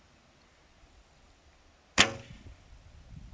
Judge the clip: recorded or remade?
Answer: recorded